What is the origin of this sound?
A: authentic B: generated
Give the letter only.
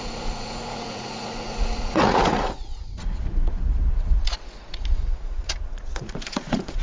B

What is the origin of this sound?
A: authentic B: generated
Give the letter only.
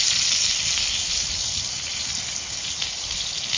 A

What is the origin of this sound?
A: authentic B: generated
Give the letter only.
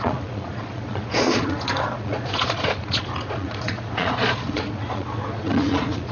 B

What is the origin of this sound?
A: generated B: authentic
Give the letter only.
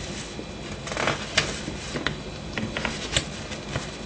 B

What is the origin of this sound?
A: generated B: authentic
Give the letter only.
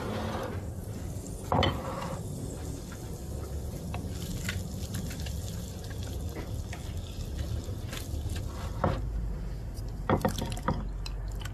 B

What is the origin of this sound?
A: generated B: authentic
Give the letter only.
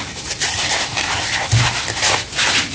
B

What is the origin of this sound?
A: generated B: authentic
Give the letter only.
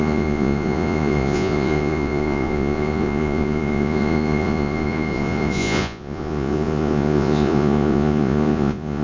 A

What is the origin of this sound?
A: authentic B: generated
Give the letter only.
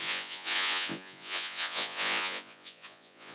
B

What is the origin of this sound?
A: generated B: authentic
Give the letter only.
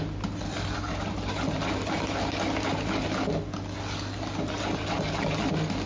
B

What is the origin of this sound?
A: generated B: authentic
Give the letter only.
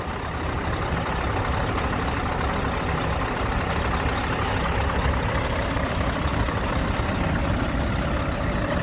B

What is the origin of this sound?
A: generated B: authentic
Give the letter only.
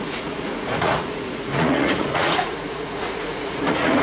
A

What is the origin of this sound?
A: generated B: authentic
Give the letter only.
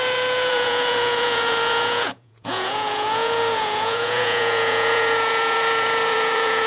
A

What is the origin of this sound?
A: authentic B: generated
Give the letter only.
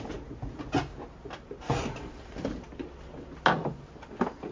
A